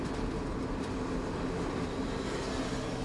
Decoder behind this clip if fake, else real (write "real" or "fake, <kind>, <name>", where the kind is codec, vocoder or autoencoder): real